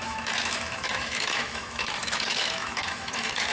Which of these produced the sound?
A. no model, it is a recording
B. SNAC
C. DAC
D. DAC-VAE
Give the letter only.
D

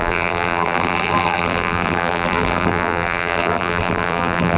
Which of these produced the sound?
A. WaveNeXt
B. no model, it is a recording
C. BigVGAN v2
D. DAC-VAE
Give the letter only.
C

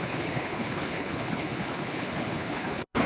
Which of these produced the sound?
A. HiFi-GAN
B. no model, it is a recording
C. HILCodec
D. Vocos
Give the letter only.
C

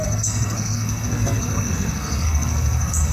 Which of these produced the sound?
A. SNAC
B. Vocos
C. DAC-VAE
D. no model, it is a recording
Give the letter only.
A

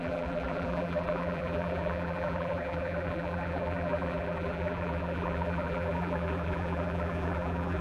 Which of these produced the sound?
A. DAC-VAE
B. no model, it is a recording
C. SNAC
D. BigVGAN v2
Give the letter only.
D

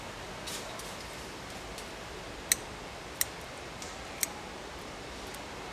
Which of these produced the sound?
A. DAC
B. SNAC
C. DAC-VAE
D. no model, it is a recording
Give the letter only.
D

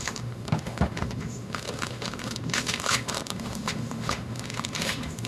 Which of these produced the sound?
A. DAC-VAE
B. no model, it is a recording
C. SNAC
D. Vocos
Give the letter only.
A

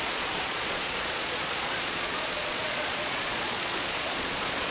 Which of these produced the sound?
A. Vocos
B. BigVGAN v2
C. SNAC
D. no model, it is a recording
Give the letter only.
A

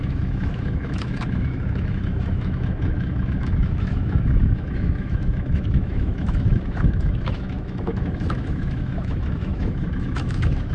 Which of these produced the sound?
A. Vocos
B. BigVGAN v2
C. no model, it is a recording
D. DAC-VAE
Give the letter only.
D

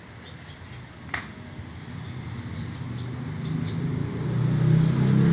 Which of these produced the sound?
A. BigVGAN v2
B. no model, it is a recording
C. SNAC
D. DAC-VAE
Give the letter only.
B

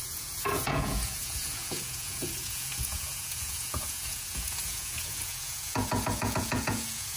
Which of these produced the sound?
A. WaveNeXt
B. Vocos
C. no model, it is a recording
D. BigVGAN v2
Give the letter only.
B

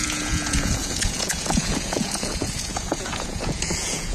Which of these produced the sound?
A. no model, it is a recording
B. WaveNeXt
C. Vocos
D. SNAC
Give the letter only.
C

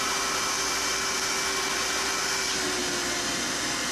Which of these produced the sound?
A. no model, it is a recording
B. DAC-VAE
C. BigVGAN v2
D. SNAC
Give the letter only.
A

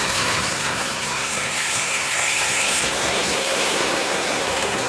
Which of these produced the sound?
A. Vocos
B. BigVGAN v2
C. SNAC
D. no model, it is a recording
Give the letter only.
C